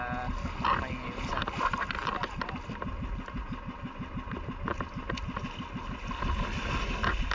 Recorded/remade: recorded